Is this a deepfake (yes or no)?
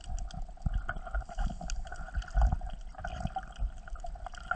no